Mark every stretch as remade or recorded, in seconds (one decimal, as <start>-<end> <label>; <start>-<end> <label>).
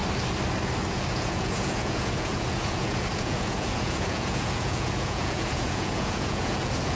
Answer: 0.0-0.9 recorded; 0.9-7.0 remade